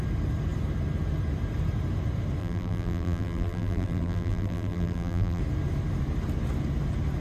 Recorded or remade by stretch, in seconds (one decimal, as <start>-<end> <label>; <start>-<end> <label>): 0.0-2.4 recorded; 2.4-5.4 remade; 5.4-7.2 recorded